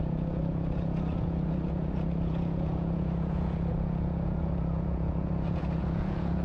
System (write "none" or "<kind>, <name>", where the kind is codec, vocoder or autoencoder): vocoder, Vocos